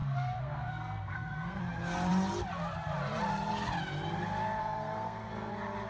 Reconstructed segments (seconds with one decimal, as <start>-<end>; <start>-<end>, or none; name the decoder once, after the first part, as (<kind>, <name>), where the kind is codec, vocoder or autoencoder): 0.0-1.6 (codec, SNAC); 4.6-5.5